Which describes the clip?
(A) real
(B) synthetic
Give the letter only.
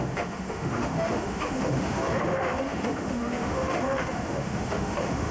B